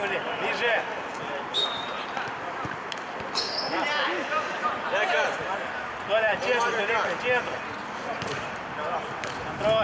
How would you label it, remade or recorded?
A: recorded